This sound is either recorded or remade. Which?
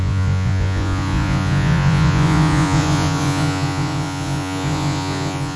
remade